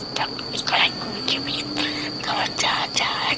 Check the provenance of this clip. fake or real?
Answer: real